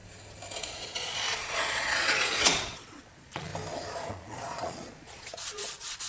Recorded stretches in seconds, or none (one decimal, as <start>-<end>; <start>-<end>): 0.0-0.6; 3.5-4.1